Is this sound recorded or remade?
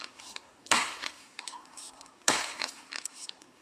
remade